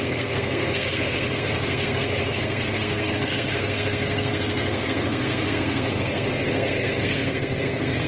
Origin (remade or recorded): remade